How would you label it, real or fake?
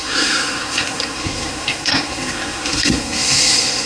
fake